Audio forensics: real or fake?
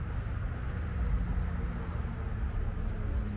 real